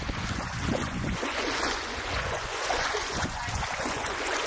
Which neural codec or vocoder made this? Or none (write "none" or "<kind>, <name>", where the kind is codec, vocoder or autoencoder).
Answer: vocoder, Vocos